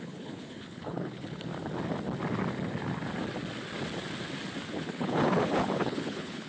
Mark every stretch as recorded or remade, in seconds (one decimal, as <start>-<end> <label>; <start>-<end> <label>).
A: 0.0-1.5 remade; 1.5-4.7 recorded; 4.7-6.5 remade